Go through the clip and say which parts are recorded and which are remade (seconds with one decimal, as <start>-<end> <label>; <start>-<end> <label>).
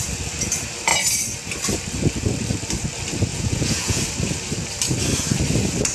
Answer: 0.0-3.3 recorded; 3.3-4.0 remade; 4.0-5.9 recorded